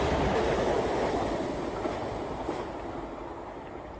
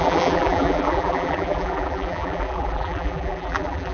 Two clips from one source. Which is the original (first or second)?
first